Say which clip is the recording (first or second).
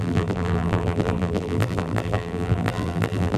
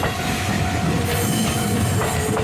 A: second